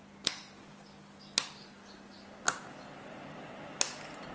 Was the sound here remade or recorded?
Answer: recorded